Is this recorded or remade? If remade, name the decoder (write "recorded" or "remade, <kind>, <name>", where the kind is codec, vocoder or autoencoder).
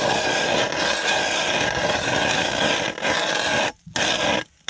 recorded